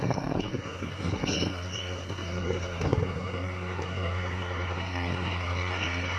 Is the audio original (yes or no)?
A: no